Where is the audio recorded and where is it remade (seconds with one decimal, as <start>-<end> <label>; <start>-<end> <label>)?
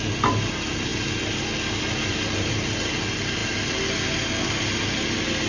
0.0-5.5 recorded